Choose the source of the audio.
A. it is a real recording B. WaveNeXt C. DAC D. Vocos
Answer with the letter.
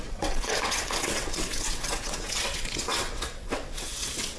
B